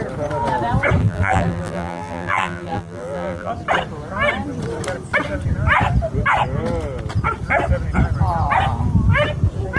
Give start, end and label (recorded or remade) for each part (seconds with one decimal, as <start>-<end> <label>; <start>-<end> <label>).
0.0-1.0 recorded; 1.0-3.5 remade; 3.5-9.8 recorded